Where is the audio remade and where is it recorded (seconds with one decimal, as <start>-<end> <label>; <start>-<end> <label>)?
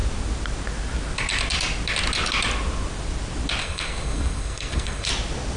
0.0-3.6 recorded; 3.6-5.1 remade; 5.1-5.6 recorded